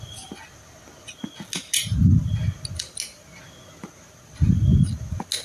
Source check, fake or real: real